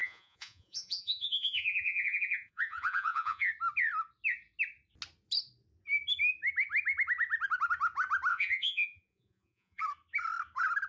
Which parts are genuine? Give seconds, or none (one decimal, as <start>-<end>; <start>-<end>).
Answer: 3.5-8.3; 9.8-10.9